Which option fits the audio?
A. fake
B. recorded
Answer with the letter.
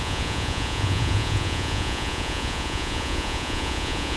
A